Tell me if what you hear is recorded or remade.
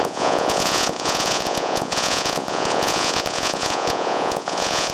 remade